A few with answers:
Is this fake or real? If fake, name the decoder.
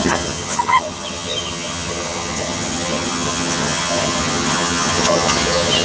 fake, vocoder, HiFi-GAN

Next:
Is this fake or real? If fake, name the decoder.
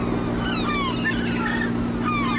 real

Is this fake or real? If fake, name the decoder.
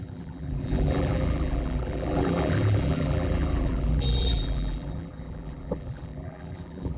fake, vocoder, BigVGAN v2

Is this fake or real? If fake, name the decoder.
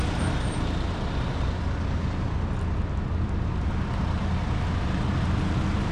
real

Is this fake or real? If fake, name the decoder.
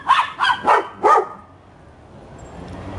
real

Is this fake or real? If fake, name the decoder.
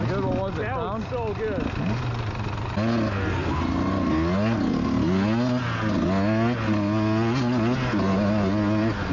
real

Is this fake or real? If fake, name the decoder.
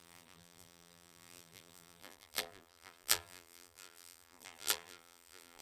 fake, vocoder, BigVGAN v2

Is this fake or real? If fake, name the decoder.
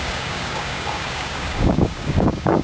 fake, codec, DAC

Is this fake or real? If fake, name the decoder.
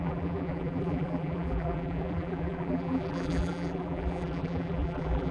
fake, vocoder, BigVGAN v2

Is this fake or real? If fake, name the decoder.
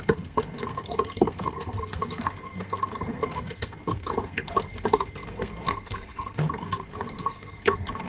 fake, codec, SNAC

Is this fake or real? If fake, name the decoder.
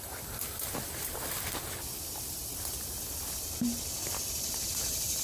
real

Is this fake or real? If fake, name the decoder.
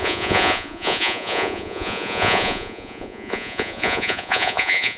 fake, vocoder, Vocos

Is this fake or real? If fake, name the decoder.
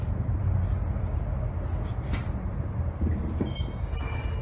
real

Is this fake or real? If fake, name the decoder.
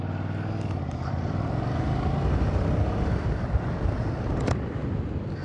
real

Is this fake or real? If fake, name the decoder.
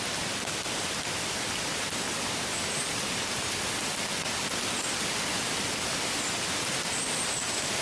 real